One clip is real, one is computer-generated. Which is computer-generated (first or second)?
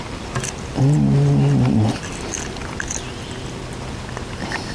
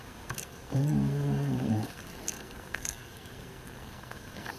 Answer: second